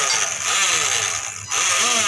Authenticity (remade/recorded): recorded